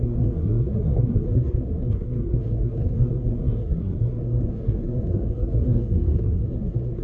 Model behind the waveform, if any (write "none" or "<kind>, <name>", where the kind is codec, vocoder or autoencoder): codec, SNAC